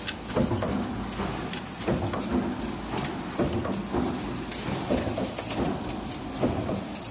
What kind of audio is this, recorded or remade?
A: recorded